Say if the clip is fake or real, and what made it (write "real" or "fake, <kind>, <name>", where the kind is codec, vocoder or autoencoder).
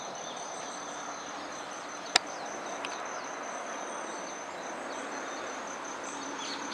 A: real